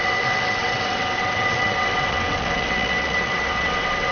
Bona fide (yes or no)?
no